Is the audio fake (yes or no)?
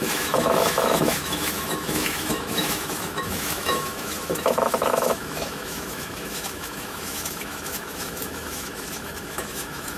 yes